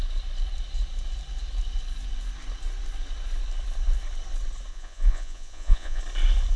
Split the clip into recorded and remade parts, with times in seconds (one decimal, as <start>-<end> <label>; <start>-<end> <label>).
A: 0.0-4.7 recorded; 4.7-6.0 remade; 6.0-6.6 recorded